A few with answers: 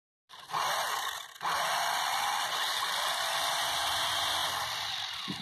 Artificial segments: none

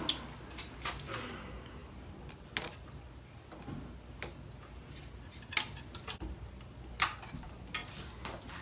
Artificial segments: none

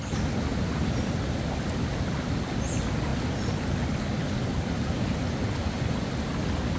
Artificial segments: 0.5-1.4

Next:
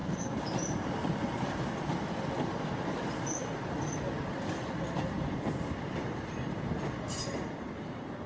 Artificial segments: none